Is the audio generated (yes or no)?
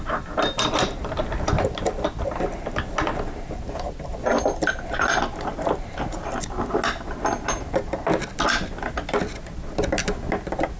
no